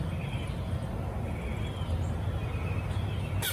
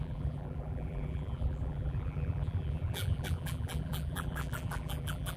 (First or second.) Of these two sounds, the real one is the first